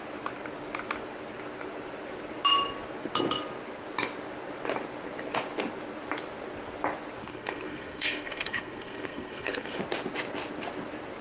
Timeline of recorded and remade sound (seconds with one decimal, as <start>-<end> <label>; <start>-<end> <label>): 0.0-7.2 recorded; 7.2-9.8 remade; 9.8-11.2 recorded